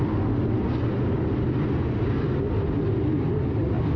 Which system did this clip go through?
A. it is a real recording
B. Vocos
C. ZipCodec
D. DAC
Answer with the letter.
A